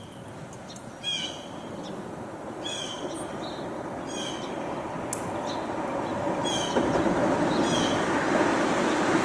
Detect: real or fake real